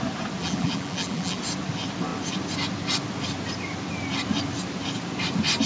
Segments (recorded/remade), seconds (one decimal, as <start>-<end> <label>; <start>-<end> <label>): 0.0-0.4 recorded; 0.4-1.4 remade; 1.4-5.7 recorded